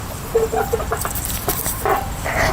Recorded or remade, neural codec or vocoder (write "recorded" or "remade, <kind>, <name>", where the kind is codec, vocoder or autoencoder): remade, vocoder, BigVGAN v2